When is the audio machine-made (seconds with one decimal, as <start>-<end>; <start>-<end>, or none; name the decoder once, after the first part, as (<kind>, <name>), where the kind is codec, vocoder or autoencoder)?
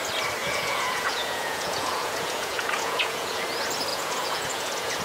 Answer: 0.4-3.4 (vocoder, Vocos); 3.9-5.0